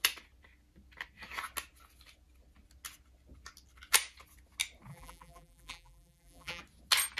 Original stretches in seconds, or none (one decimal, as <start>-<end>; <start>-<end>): 0.0-4.9; 6.6-7.2